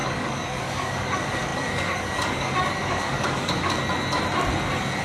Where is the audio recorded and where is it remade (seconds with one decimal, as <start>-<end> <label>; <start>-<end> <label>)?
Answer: 0.0-3.8 remade; 3.8-5.0 recorded